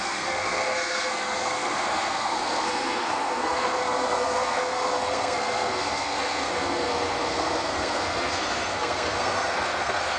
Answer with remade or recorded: remade